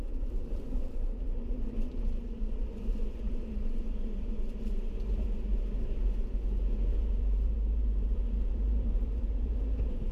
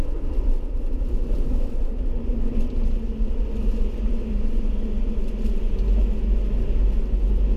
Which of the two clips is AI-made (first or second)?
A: first